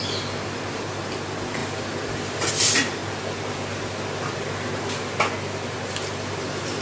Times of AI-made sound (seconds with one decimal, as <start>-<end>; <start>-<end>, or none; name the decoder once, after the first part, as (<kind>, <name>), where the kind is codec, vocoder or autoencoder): 0.0-3.0 (vocoder, BigVGAN v2); 6.1-6.8